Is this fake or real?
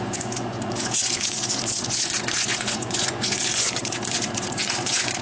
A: fake